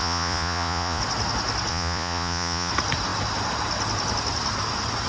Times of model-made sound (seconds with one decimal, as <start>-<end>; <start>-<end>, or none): 0.0-1.0; 1.7-2.7